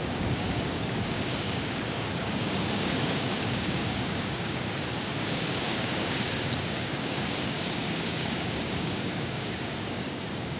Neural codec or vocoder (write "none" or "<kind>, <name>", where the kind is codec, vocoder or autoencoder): codec, DAC